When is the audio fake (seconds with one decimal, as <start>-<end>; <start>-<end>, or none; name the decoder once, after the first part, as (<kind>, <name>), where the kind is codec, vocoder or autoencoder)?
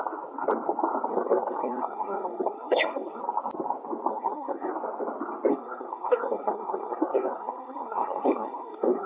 1.1-3.2 (codec, SNAC); 4.1-4.7; 5.5-9.1